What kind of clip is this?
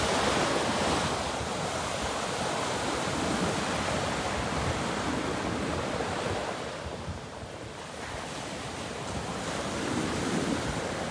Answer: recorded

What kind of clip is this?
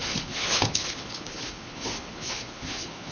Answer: remade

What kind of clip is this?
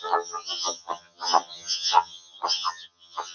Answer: remade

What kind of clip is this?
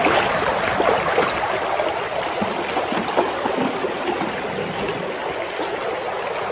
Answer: recorded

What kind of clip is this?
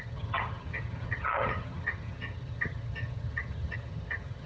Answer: remade